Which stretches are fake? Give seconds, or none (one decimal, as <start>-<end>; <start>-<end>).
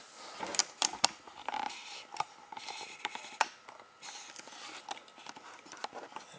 0.6-3.1